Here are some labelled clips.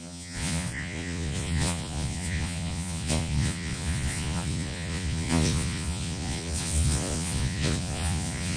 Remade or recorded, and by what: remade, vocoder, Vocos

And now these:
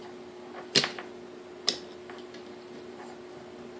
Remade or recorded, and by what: recorded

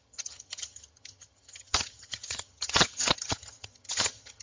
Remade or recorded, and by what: remade, vocoder, HiFi-GAN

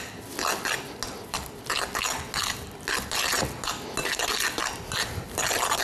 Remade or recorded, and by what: recorded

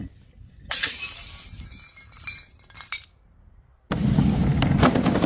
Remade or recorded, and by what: recorded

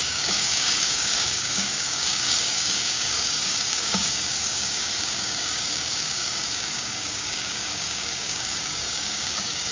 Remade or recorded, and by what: remade, codec, DAC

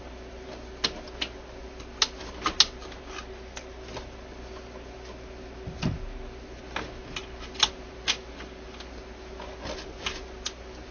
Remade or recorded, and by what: recorded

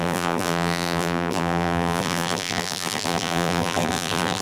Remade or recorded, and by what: remade, vocoder, BigVGAN v2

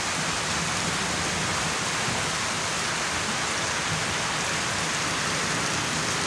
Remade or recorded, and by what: recorded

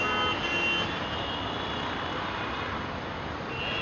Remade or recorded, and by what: recorded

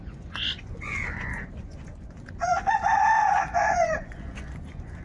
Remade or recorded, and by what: remade, vocoder, Vocos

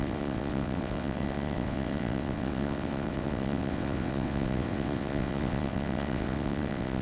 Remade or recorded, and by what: remade, vocoder, WaveNeXt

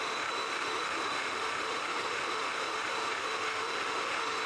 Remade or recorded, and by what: remade, autoencoder, DAC-VAE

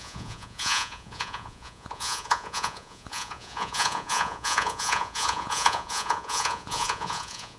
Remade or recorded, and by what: remade, vocoder, Vocos